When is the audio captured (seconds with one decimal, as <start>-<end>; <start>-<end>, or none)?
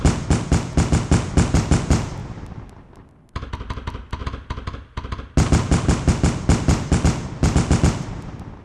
0.0-8.6